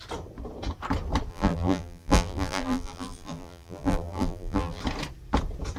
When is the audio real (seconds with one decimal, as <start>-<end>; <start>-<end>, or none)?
0.0-1.3; 4.8-5.8